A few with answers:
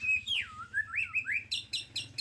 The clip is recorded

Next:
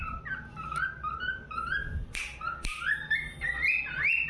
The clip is recorded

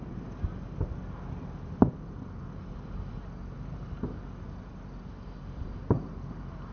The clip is recorded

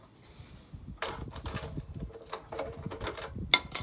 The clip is recorded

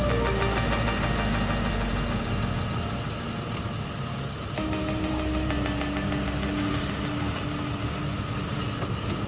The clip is recorded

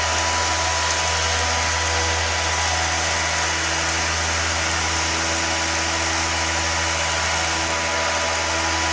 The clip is recorded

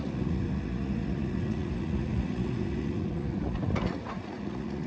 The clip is remade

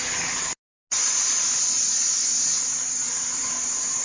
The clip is recorded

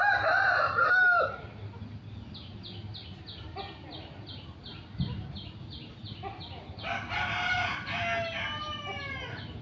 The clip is recorded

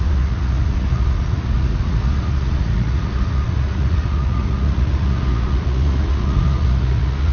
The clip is remade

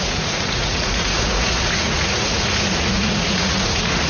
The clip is remade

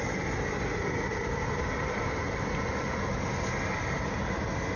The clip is recorded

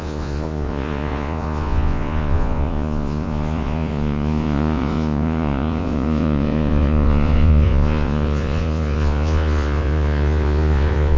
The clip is remade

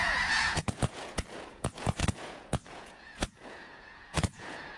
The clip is remade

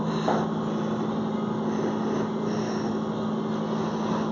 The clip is recorded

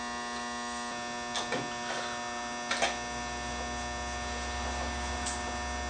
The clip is recorded